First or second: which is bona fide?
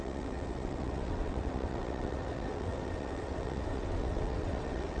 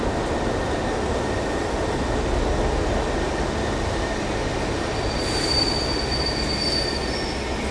second